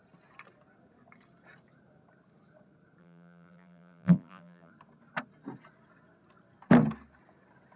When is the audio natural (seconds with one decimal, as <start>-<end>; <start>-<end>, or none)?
0.0-3.0; 4.7-7.8